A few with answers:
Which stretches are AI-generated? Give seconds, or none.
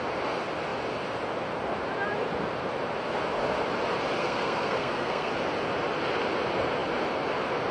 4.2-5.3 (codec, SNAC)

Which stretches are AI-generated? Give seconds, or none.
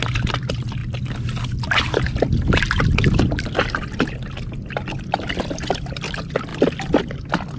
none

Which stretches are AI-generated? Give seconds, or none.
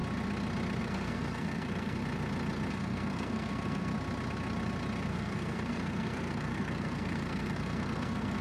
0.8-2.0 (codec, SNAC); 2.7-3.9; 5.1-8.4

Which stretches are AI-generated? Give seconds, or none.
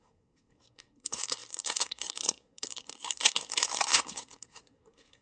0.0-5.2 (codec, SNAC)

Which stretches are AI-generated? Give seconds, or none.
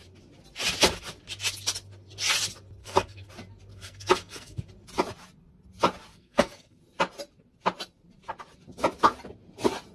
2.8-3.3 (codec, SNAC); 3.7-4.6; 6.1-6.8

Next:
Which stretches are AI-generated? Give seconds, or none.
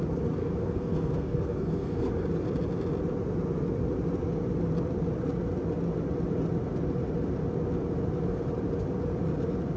0.4-2.1 (codec, SNAC)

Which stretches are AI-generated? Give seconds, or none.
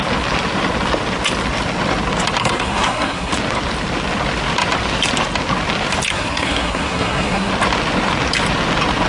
2.4-3.3 (codec, SNAC); 6.1-7.5